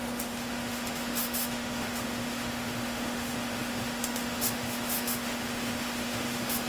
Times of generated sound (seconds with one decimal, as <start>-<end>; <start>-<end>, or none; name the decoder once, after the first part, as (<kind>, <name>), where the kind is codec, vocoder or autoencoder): 0.0-6.7 (autoencoder, DAC-VAE)